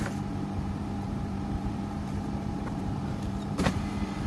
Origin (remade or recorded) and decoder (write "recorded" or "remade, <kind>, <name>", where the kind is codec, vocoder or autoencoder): remade, vocoder, BigVGAN v2